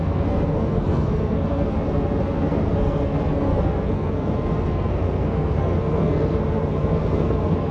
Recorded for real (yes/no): no